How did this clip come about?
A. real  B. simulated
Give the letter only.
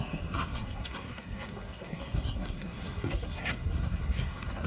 B